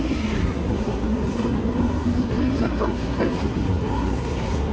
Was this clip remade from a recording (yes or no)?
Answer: yes